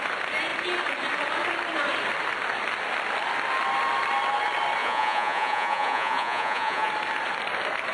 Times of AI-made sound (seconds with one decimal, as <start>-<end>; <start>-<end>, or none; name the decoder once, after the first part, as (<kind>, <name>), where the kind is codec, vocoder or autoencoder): 4.8-6.9 (vocoder, Vocos)